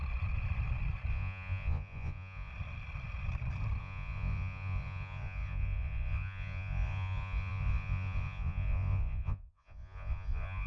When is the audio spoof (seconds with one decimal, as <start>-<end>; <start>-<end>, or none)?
1.1-2.5; 3.8-10.7